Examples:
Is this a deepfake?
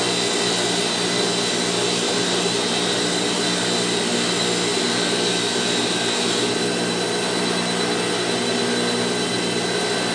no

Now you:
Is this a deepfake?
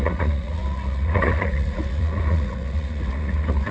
yes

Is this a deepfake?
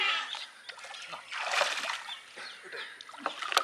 no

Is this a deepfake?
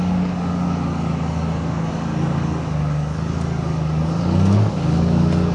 yes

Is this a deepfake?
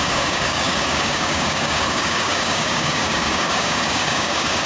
yes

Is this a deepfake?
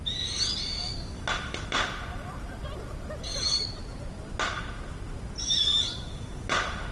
no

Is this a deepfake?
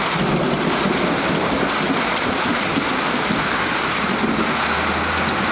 no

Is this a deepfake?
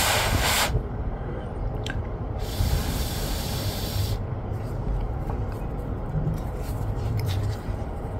yes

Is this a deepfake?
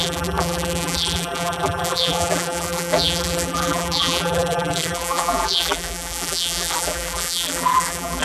yes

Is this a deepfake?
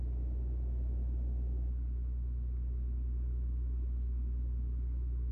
no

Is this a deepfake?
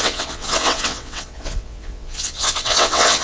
yes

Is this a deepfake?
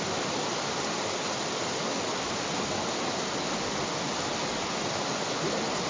no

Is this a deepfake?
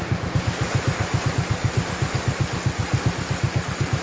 no